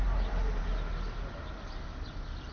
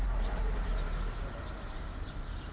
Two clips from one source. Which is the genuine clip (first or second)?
first